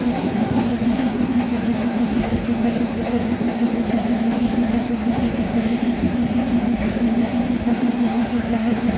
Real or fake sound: fake